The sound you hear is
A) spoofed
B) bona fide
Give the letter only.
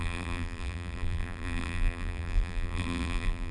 A